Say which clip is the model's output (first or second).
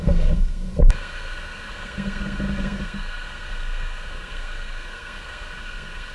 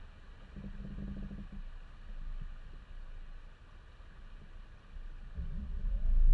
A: first